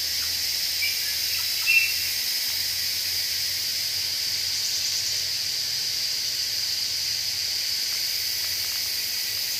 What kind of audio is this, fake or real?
real